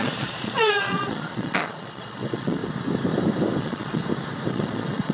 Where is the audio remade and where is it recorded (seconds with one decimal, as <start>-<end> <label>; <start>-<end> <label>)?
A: 0.0-2.6 remade; 2.6-3.6 recorded; 3.6-4.0 remade; 4.0-4.5 recorded; 4.5-5.1 remade